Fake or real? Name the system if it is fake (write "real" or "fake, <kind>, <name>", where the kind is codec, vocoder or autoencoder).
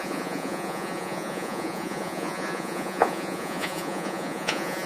fake, vocoder, Vocos